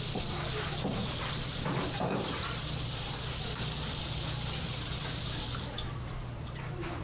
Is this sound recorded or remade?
remade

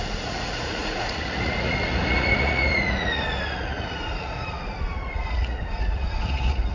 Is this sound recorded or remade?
remade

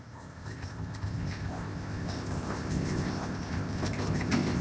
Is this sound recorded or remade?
remade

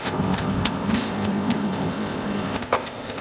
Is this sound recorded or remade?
remade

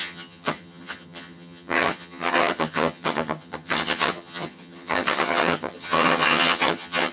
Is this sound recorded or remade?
remade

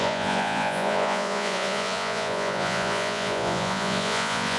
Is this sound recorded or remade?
remade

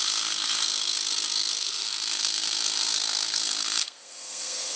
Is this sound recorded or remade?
remade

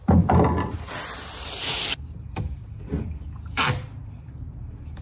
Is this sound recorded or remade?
recorded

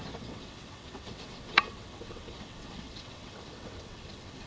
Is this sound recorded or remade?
remade